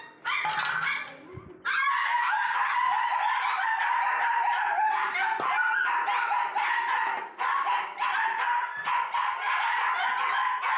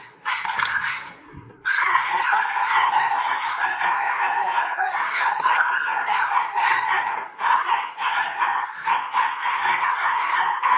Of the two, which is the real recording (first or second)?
first